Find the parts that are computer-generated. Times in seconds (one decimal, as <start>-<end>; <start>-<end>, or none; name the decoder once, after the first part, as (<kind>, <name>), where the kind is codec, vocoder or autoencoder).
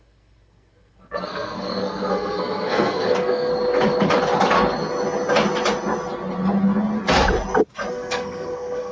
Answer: 0.0-3.5 (codec, SNAC); 7.9-8.9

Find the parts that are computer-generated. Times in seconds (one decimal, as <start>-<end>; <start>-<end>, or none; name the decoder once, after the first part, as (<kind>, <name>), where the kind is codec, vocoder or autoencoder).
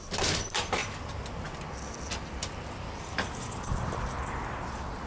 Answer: none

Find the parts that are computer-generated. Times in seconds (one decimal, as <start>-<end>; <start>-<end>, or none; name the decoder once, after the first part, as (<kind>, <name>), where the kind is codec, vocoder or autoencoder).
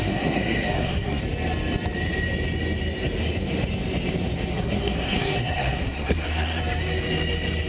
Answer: 0.0-1.2 (codec, SNAC); 4.5-6.6